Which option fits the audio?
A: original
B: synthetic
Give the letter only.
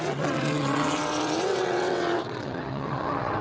B